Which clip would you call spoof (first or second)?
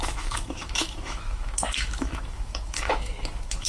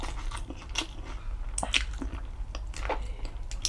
first